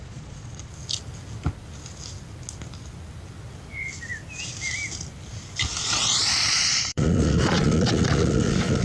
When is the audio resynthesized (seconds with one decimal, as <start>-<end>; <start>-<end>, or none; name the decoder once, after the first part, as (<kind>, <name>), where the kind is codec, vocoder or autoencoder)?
0.0-0.7 (vocoder, Vocos); 5.8-8.8